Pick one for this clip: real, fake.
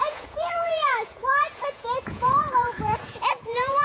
fake